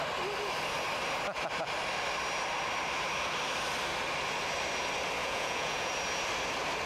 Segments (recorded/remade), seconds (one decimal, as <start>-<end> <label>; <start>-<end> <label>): 0.0-5.2 recorded; 5.2-5.9 remade; 5.9-6.9 recorded